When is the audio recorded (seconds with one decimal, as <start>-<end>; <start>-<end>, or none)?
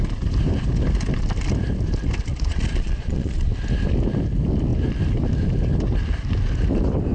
0.0-2.3; 3.5-7.1